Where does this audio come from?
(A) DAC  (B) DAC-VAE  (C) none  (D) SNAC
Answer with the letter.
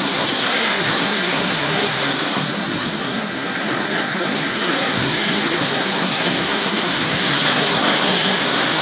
D